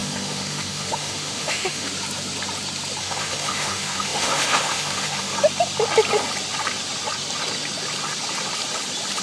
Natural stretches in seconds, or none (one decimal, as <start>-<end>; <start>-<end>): 1.9-3.0; 5.3-9.2